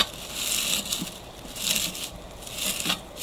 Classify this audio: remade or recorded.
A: recorded